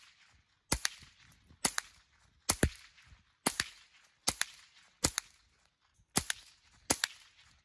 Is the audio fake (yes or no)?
no